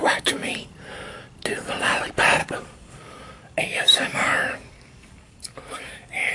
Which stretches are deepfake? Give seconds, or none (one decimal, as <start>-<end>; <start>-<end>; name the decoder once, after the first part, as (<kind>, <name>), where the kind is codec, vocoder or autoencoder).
0.0-0.7 (codec, DAC); 2.4-6.3